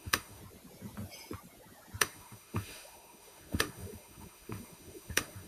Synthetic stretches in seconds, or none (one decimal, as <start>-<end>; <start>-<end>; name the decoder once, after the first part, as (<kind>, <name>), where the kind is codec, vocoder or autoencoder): 0.0-0.4 (autoencoder, DAC-VAE); 2.0-5.5